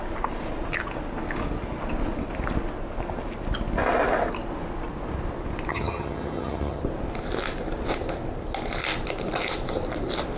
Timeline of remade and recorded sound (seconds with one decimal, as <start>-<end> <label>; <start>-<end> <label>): 0.0-5.7 recorded; 5.7-6.8 remade; 6.8-10.4 recorded